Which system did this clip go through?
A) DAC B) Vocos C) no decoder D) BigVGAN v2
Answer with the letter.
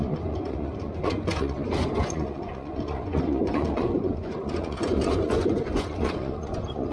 B